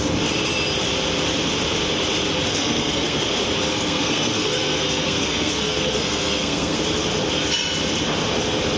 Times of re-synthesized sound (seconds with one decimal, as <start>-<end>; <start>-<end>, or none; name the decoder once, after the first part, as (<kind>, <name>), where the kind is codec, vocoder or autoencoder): 2.5-3.3 (codec, SNAC); 3.7-6.8